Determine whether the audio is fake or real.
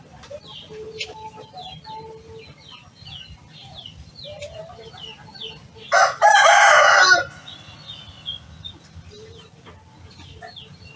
real